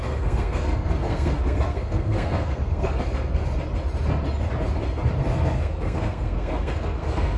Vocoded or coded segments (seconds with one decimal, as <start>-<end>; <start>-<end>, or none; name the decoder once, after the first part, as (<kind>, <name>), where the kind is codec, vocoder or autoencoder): 0.0-3.4 (codec, SNAC); 5.2-7.4